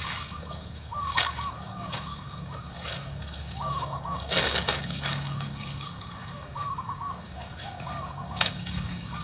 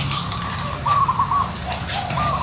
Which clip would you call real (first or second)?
second